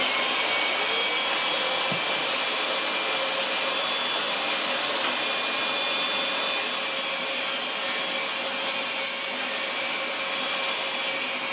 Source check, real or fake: real